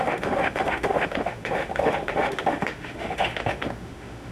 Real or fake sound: fake